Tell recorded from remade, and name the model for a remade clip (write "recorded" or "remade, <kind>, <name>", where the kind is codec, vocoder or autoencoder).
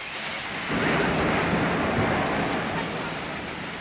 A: recorded